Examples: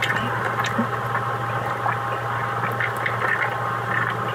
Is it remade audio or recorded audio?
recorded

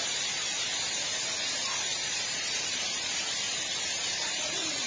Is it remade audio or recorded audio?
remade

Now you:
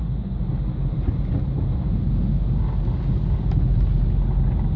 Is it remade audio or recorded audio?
recorded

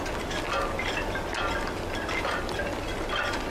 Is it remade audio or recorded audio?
recorded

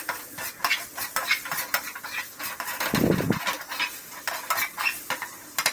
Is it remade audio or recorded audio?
recorded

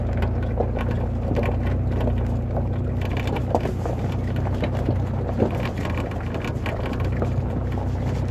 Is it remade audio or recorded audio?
recorded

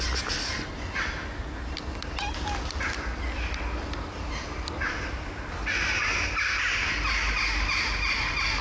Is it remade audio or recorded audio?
recorded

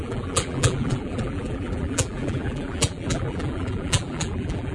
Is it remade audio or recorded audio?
remade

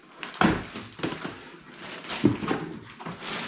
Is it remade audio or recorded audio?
recorded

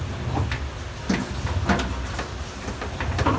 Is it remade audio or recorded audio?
recorded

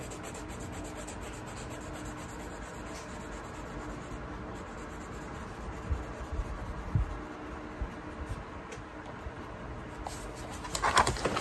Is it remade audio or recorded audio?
recorded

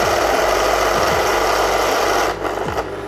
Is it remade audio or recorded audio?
recorded